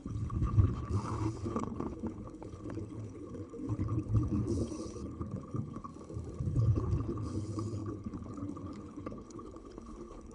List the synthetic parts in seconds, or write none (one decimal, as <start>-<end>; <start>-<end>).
0.0-5.9; 6.4-10.3